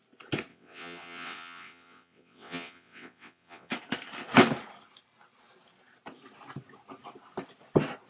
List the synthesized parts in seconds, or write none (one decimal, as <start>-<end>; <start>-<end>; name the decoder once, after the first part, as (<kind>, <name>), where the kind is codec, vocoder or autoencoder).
0.5-3.7 (vocoder, WaveNeXt)

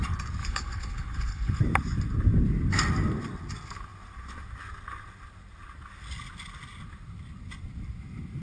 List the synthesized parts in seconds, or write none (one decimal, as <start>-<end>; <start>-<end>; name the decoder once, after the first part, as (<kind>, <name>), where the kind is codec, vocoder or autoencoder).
0.4-1.6 (codec, HILCodec)

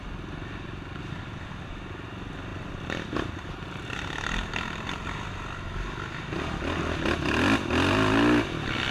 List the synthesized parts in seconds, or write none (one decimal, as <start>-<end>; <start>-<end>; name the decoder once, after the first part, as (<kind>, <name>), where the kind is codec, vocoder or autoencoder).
none

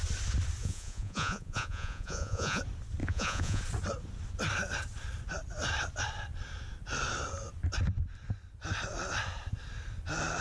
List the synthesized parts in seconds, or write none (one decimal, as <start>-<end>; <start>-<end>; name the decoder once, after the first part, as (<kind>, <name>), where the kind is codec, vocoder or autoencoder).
0.6-2.6 (vocoder, Vocos); 3.0-3.6

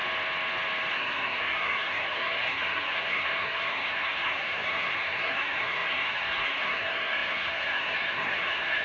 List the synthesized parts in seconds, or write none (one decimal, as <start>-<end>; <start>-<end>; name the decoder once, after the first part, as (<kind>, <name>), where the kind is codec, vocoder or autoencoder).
0.9-8.8 (codec, SNAC)

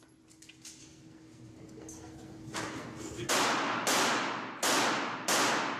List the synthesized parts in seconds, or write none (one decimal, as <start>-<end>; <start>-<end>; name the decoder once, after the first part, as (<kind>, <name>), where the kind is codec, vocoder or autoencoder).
0.8-3.3 (codec, SNAC)

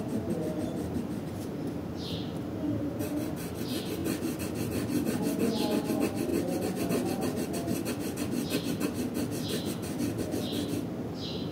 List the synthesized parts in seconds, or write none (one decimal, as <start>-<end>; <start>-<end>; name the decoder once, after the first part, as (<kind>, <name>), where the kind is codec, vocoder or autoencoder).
none